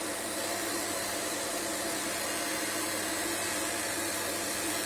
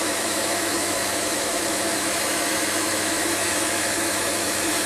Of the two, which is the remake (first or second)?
second